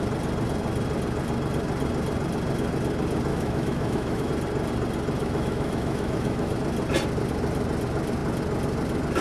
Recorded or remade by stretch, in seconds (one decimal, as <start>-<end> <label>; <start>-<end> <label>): 0.0-3.3 recorded; 3.3-4.3 remade; 4.3-5.2 recorded; 5.2-6.5 remade; 6.5-9.2 recorded